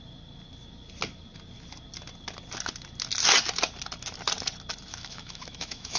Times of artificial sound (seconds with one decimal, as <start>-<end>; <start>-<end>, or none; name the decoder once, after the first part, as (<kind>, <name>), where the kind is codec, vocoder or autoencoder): 4.9-6.0 (autoencoder, DAC-VAE)